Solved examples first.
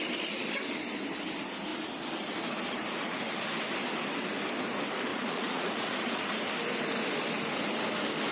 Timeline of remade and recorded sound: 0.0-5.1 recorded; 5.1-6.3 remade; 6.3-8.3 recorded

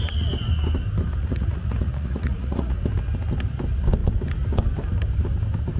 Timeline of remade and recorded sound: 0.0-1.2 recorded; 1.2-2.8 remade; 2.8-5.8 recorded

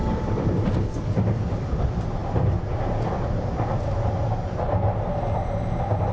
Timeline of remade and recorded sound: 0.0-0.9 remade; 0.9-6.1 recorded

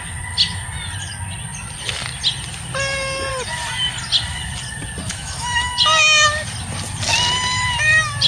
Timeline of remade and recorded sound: 0.0-5.1 recorded; 5.1-5.7 remade; 5.7-8.3 recorded

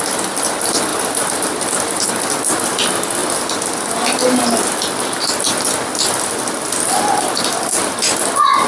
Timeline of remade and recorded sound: 0.0-8.7 recorded